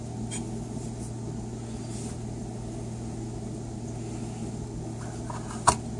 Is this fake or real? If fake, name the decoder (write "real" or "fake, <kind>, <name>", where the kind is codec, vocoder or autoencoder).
real